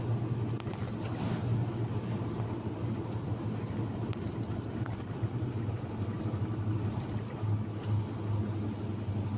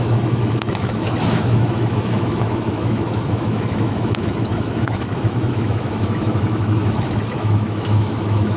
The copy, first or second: second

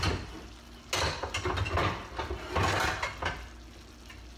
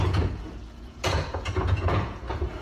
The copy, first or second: second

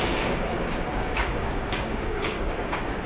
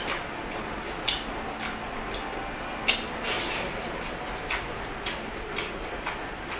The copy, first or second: first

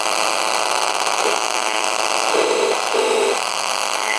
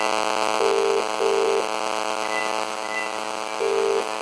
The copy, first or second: first